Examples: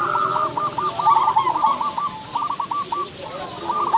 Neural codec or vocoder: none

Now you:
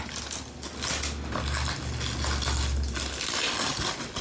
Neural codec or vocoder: none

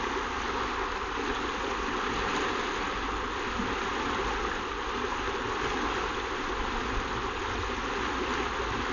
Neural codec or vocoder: none